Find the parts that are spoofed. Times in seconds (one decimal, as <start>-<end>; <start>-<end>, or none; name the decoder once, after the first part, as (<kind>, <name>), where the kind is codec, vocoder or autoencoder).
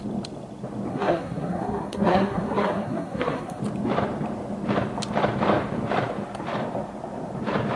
0.9-3.6 (codec, SNAC)